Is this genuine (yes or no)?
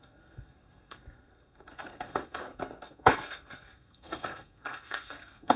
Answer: no